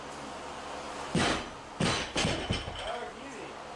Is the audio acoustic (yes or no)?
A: yes